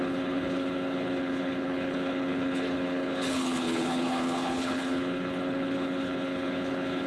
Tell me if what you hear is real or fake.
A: fake